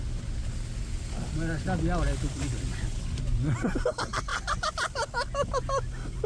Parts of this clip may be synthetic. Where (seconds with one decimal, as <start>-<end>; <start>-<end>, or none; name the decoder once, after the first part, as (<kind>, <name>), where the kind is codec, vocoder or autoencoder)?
none